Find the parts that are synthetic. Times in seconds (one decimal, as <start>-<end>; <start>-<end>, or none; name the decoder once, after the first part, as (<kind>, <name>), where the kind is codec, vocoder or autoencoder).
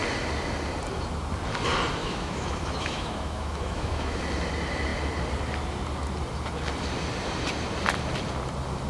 2.0-4.2 (autoencoder, DAC-VAE)